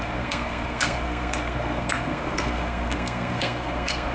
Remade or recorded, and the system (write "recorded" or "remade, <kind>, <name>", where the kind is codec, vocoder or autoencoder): remade, codec, SNAC